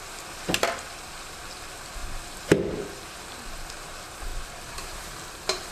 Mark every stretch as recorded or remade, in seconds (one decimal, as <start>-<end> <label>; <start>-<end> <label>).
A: 0.0-4.3 recorded; 4.3-5.7 remade